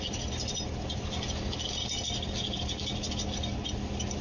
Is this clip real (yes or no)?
yes